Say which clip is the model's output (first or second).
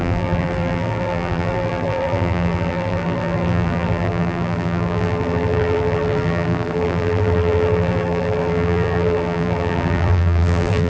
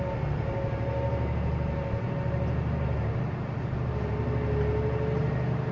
first